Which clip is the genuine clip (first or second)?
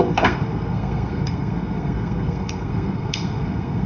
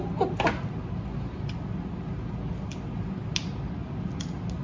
second